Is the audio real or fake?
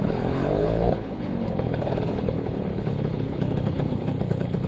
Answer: fake